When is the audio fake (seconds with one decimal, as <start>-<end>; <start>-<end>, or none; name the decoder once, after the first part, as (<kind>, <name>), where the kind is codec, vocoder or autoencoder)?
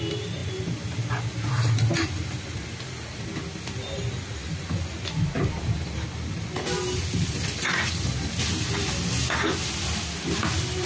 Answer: none